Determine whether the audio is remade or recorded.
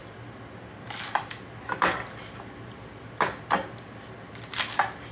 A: recorded